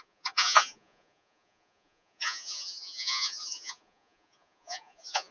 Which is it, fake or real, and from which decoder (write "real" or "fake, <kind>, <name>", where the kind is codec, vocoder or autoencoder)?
fake, vocoder, Vocos